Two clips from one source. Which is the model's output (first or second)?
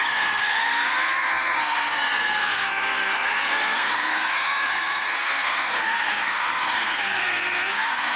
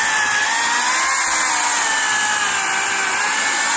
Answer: first